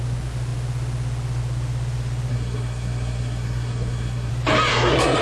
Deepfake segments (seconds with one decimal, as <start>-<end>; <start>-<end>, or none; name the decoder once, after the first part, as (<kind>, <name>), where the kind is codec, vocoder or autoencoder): 2.3-4.3 (codec, SNAC); 4.7-5.2